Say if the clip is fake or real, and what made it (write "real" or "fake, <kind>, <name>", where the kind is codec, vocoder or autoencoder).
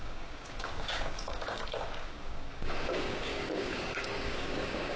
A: fake, codec, DAC